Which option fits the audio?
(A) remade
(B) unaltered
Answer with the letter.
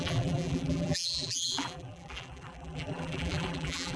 A